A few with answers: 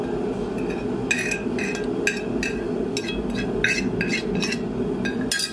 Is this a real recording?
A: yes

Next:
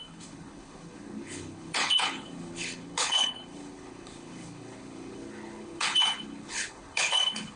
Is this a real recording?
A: no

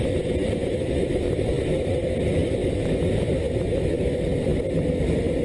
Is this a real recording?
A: yes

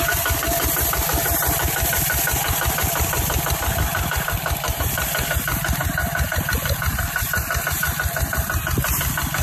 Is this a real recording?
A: no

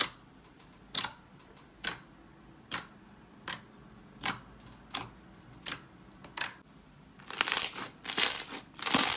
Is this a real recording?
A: yes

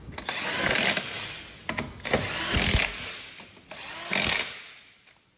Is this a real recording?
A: yes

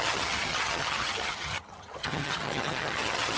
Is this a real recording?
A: no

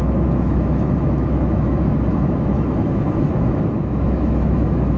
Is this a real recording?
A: no